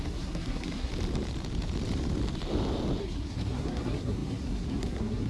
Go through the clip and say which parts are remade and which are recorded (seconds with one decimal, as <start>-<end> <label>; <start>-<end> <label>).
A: 0.0-0.9 remade; 0.9-3.0 recorded; 3.0-5.3 remade